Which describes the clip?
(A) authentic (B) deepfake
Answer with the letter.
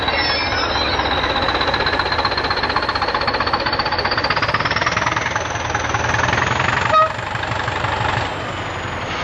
A